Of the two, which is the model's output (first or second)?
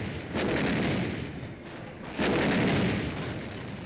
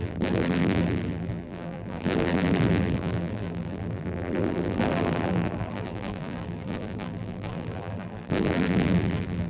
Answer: second